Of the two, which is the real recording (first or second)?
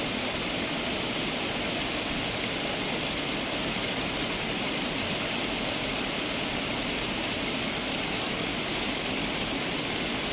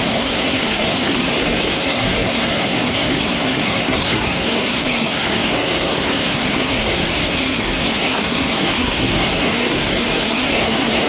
first